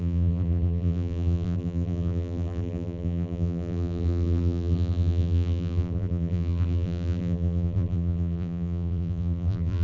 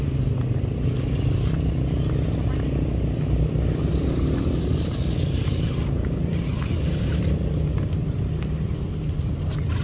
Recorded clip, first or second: second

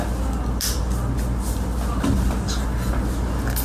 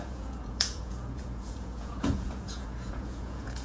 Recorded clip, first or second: first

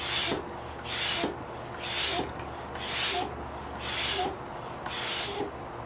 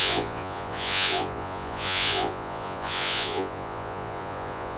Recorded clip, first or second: first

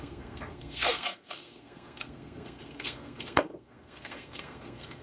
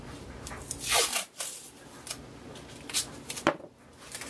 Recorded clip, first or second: second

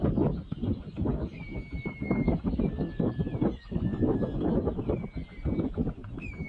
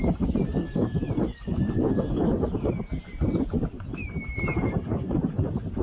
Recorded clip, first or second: first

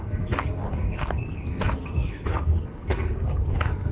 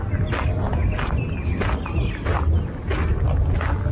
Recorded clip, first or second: second